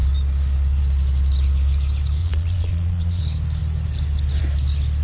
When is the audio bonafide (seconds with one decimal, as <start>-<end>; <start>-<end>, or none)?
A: 0.0-2.2; 3.2-5.0